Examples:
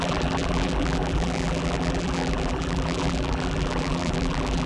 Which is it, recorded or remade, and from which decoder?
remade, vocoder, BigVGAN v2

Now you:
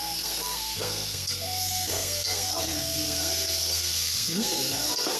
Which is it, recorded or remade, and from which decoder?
remade, codec, SNAC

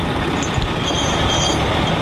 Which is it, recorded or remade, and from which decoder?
recorded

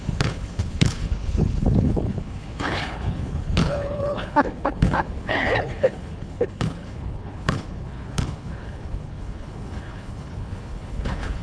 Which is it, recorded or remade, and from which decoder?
remade, codec, HILCodec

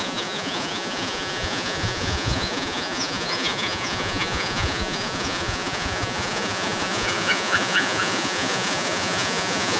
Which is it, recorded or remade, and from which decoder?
remade, vocoder, Vocos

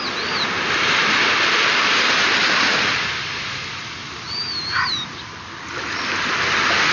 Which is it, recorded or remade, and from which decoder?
recorded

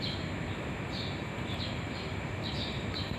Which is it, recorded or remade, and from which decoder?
remade, vocoder, BigVGAN v2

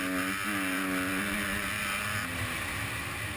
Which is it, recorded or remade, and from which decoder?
recorded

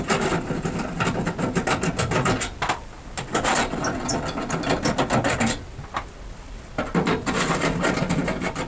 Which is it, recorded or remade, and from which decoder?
recorded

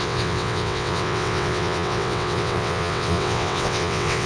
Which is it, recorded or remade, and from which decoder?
remade, vocoder, WaveNeXt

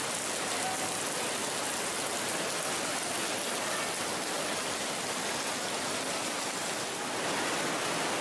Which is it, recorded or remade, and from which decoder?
recorded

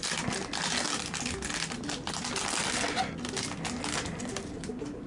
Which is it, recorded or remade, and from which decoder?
recorded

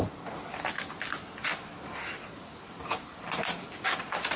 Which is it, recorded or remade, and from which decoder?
recorded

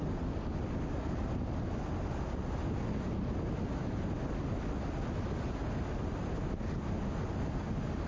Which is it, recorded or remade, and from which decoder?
recorded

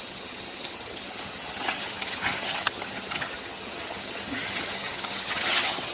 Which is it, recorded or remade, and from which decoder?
remade, vocoder, HiFi-GAN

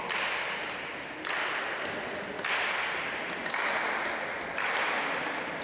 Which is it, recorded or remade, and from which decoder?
recorded